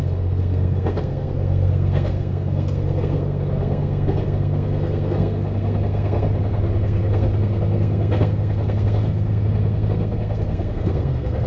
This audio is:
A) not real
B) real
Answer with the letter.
A